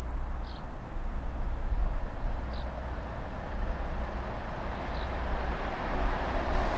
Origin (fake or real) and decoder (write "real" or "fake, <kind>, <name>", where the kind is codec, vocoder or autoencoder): real